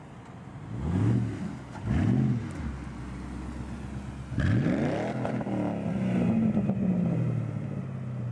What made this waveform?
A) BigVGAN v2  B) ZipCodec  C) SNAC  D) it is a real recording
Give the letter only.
D